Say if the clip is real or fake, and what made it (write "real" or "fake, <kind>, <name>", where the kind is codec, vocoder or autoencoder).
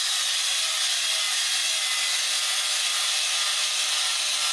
real